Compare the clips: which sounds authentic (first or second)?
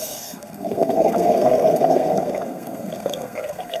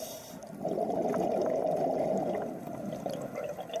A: second